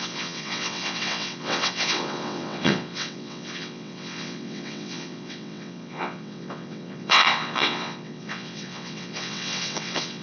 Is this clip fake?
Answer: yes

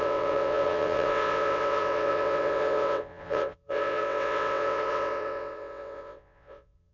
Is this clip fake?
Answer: yes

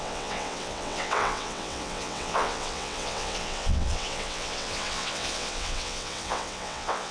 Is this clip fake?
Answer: yes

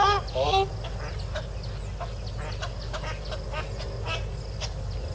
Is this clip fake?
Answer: no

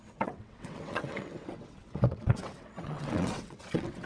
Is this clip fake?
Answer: yes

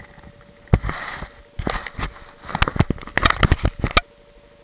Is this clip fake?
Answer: no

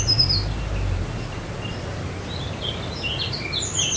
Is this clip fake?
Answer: no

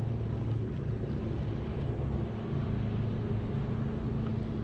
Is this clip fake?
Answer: no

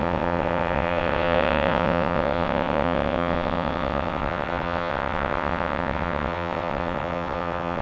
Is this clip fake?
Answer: yes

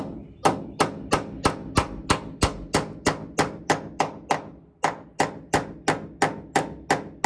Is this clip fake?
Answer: no